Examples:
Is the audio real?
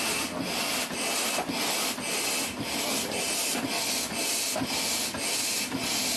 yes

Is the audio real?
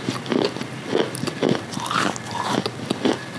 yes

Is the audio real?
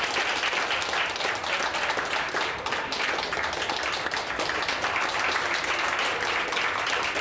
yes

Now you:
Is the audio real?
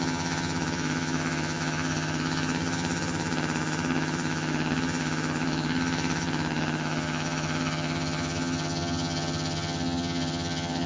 no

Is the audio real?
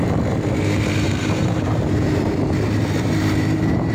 no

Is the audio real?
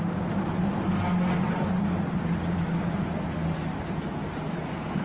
yes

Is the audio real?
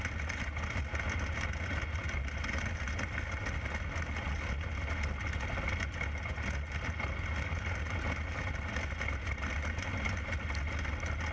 yes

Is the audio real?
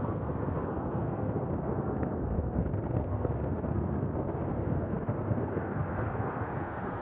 no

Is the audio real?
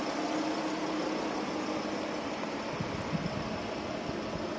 yes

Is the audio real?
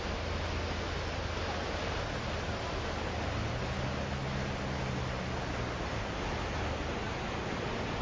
yes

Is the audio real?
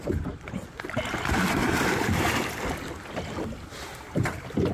yes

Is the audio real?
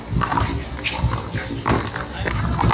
yes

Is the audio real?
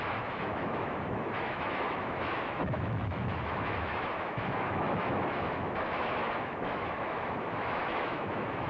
no